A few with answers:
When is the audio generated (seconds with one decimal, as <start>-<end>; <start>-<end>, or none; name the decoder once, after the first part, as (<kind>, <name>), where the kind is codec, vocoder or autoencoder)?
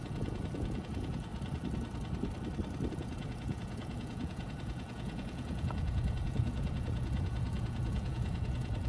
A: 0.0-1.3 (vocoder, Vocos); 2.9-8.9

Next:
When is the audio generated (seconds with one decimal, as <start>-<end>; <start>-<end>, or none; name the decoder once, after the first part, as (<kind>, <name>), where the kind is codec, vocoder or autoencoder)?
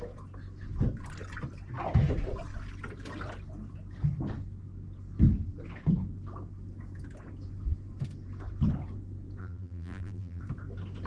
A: 9.4-10.4 (vocoder, BigVGAN v2)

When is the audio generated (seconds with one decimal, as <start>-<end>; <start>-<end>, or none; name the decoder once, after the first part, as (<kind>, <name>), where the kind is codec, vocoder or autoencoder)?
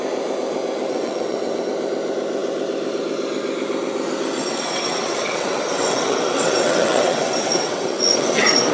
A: 0.9-1.7 (vocoder, WaveNeXt); 4.4-8.7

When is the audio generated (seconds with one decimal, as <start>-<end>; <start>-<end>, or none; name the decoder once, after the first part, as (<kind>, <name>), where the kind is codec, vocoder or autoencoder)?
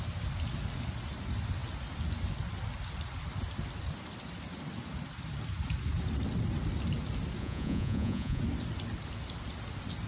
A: 7.4-8.4 (vocoder, Vocos)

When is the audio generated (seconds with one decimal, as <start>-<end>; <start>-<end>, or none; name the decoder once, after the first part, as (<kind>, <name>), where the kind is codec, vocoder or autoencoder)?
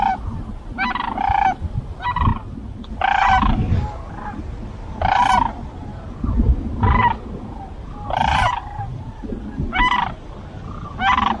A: 5.8-6.3 (vocoder, BigVGAN v2); 8.2-8.9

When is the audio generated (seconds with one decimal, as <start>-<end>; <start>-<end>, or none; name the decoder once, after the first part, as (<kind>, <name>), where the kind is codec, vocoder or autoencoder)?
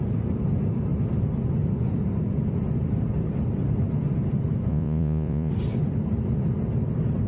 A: 4.7-5.5 (vocoder, Vocos)